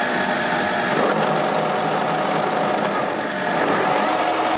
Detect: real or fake real